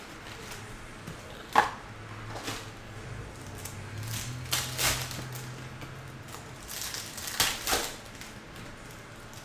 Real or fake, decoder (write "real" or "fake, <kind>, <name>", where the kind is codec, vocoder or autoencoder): real